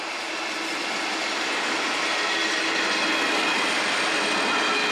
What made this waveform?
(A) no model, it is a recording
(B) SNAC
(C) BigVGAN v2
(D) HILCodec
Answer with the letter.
A